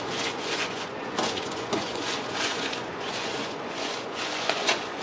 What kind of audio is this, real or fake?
fake